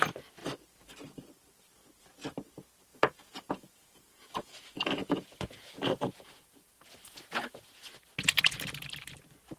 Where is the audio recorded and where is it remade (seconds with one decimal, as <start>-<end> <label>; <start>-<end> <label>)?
0.0-2.9 recorded; 2.9-7.9 remade; 7.9-9.6 recorded